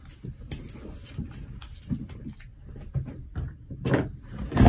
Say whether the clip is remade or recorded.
recorded